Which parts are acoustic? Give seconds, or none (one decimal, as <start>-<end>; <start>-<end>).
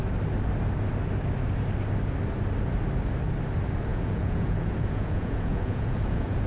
0.0-3.9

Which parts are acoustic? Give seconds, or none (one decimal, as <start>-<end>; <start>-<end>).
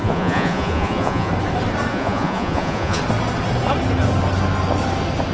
1.3-1.9; 3.0-5.3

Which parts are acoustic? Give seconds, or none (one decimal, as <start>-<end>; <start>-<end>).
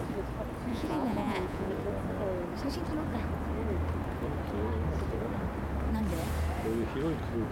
0.0-0.7; 1.7-7.5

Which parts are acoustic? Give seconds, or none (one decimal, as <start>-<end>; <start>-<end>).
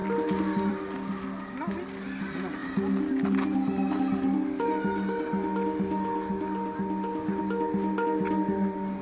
0.0-9.0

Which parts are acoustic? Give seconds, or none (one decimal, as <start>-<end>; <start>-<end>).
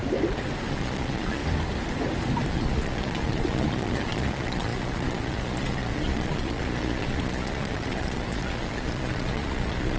0.0-0.7; 1.4-2.5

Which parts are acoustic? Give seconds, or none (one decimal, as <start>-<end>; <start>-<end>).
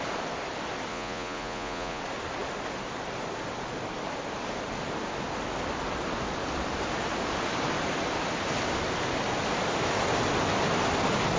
0.0-0.9; 2.0-11.4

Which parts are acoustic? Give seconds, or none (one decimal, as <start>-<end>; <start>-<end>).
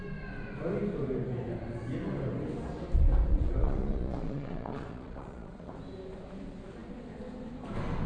0.0-3.3; 5.7-8.1